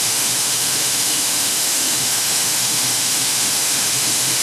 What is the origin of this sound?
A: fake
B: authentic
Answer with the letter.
A